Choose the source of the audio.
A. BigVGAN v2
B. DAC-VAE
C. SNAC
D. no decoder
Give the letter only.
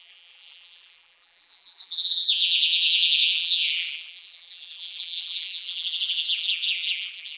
A